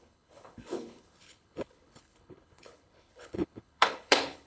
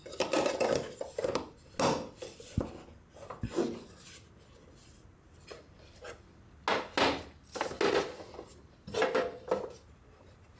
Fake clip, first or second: first